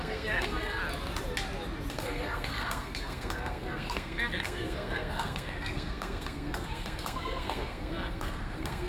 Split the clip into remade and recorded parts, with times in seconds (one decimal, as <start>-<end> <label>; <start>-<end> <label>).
0.0-0.8 remade; 0.8-1.9 recorded; 1.9-8.9 remade